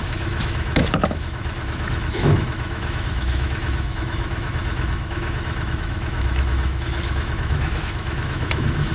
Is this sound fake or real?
fake